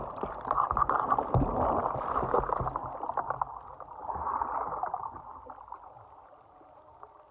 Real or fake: real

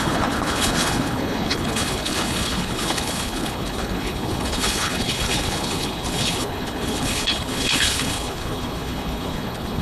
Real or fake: fake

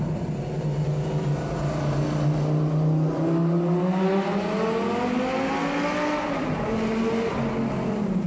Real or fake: real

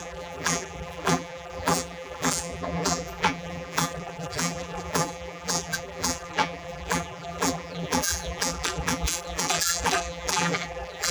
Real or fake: fake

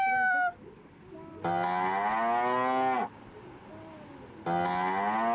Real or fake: real